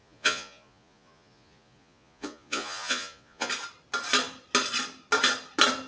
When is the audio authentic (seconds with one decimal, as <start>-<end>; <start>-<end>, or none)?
3.5-5.9